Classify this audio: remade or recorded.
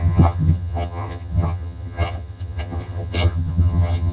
remade